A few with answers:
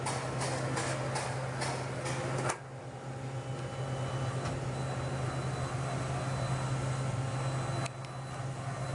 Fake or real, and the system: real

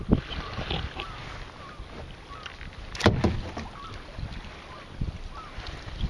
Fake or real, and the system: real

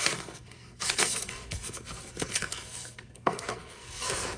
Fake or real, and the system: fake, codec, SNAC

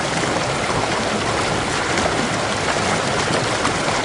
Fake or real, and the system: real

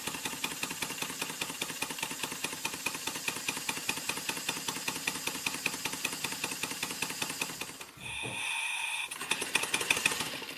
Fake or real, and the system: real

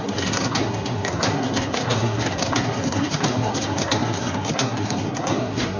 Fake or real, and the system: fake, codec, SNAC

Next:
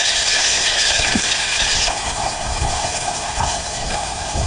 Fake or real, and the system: fake, codec, SNAC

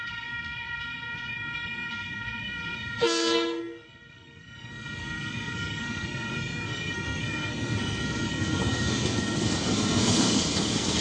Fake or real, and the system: fake, codec, SNAC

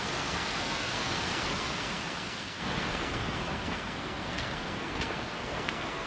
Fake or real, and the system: fake, codec, SNAC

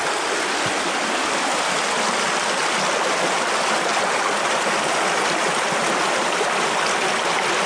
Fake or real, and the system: real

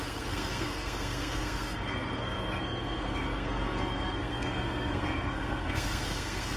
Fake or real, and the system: fake, codec, SNAC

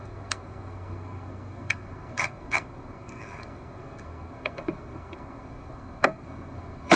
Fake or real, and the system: fake, codec, SNAC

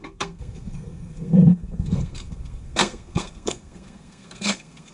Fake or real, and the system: fake, codec, SNAC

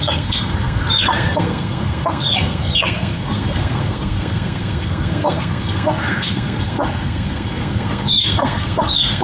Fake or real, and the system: fake, codec, SNAC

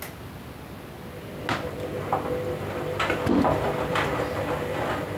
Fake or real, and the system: real